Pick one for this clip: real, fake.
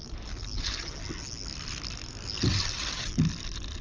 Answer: real